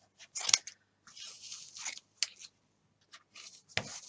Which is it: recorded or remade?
recorded